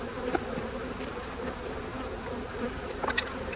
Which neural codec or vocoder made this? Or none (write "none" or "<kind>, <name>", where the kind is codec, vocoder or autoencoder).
none